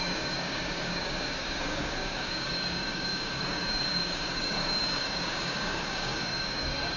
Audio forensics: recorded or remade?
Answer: remade